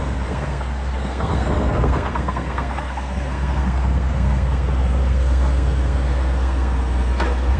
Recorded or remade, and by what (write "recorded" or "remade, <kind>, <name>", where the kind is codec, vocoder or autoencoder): remade, codec, SNAC